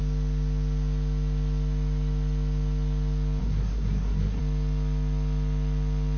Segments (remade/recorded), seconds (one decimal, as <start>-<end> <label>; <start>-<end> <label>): 0.0-3.4 recorded; 3.4-4.4 remade; 4.4-6.2 recorded